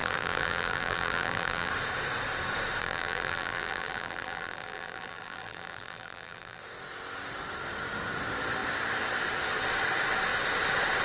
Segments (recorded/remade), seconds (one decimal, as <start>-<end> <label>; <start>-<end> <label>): 0.0-1.7 remade; 1.7-2.8 recorded; 2.8-6.6 remade; 6.6-11.0 recorded